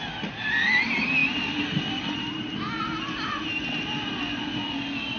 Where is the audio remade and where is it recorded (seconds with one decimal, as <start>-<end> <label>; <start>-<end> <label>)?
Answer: 0.0-5.2 recorded